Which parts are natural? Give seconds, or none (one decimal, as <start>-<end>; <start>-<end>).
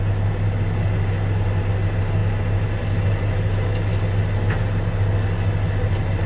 0.0-6.3